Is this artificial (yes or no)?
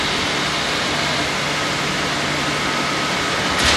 no